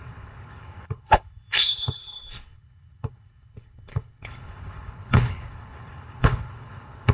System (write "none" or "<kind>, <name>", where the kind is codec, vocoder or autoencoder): codec, HILCodec